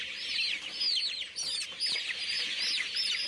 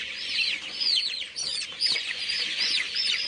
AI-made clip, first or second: second